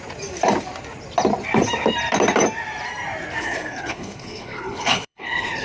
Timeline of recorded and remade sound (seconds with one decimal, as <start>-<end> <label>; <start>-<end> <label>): 0.0-3.4 recorded; 3.4-5.6 remade